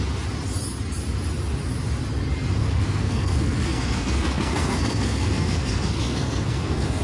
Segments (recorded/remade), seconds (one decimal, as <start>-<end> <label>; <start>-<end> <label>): 0.0-2.6 recorded; 2.6-7.0 remade